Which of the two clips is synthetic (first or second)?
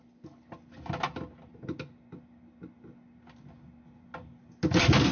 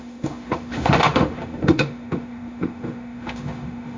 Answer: second